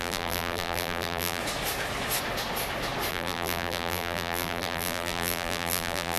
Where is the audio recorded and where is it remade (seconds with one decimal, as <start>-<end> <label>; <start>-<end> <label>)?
0.0-1.4 remade; 1.4-3.1 recorded; 3.1-6.2 remade